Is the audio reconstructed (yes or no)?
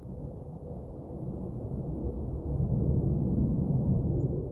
no